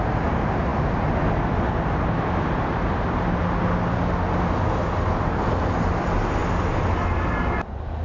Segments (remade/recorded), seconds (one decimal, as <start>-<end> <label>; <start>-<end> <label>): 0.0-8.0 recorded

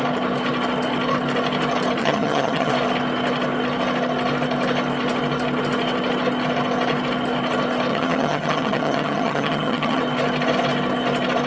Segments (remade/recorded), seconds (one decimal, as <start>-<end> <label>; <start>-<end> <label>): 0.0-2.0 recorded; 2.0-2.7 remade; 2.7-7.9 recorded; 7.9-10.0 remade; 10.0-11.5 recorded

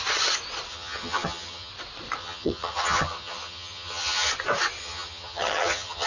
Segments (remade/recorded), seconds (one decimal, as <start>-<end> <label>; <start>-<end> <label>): 0.0-0.7 recorded; 0.7-1.7 remade; 1.7-2.2 recorded; 2.2-4.3 remade; 4.3-4.8 recorded; 4.8-6.1 remade